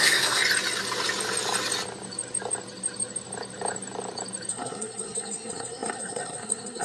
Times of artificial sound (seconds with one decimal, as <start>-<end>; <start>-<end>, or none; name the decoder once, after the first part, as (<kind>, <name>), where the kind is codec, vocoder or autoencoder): 0.0-0.4 (codec, SNAC); 4.5-6.8